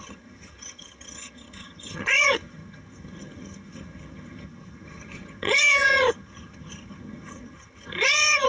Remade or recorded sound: remade